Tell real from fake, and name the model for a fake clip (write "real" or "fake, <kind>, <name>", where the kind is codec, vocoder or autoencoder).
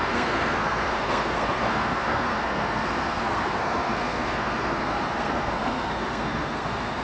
fake, codec, SNAC